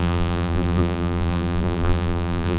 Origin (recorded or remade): remade